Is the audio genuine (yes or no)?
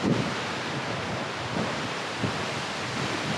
yes